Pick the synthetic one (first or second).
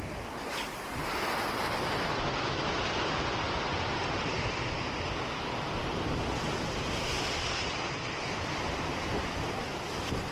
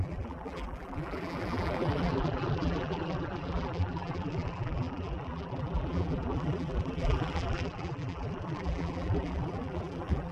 second